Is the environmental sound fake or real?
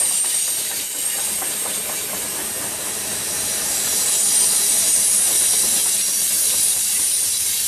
fake